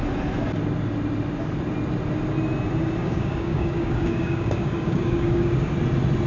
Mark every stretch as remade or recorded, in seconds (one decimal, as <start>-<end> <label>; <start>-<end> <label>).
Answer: 0.0-3.0 recorded; 3.0-5.7 remade; 5.7-6.3 recorded